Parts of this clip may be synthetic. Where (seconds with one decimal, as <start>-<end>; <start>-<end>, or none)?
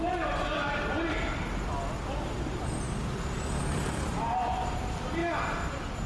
none